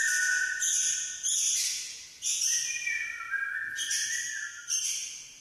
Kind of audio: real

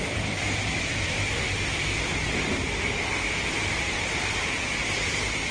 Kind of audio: fake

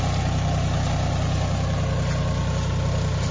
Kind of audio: real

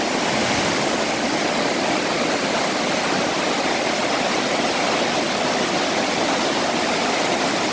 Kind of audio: real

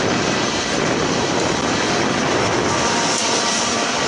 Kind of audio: fake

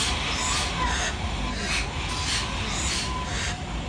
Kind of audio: real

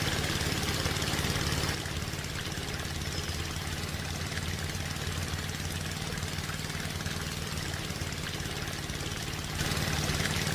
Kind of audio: real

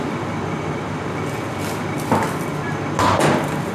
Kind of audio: real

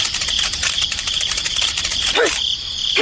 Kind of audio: fake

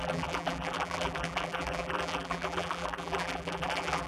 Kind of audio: fake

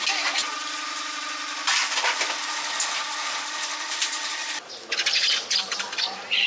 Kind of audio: fake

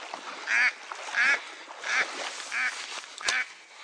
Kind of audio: real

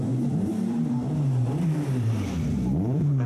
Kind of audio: fake